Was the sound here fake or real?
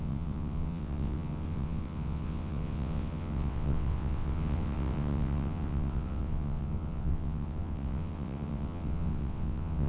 fake